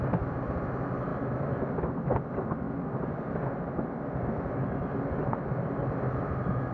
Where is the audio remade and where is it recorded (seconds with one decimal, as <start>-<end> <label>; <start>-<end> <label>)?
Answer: 0.0-6.7 recorded